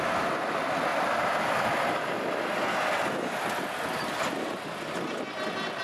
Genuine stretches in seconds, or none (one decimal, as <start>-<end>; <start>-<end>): 0.0-5.8